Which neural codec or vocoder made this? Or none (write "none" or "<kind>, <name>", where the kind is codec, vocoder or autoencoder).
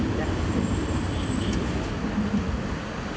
none